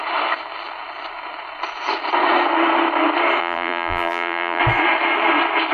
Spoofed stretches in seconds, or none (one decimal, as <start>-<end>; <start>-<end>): 3.4-4.6